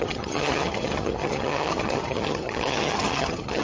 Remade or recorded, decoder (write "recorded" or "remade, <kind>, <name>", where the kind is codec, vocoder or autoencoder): remade, vocoder, HiFi-GAN